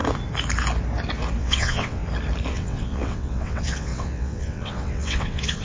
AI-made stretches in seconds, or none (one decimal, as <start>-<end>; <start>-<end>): 1.4-2.0; 2.5-5.6